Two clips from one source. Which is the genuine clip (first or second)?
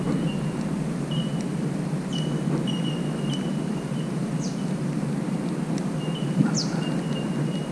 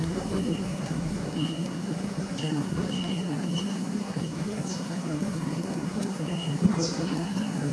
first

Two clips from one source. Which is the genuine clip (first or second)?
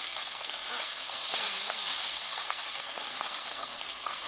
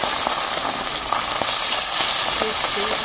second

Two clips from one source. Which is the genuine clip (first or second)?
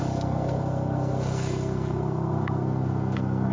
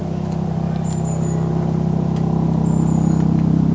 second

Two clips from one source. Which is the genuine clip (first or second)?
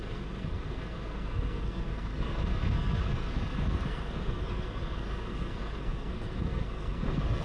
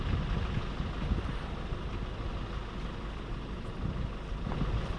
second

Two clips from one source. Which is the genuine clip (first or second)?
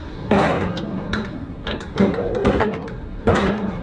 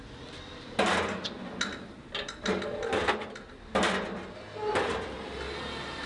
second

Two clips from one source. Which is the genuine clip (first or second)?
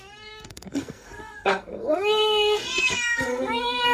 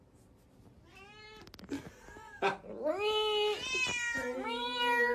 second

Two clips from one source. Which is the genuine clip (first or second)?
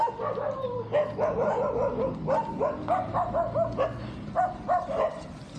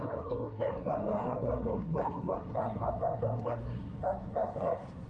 first